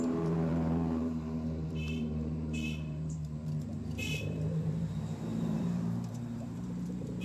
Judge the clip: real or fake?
fake